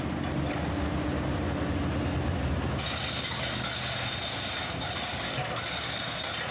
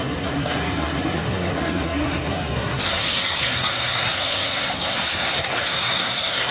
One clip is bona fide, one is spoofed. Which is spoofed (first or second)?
second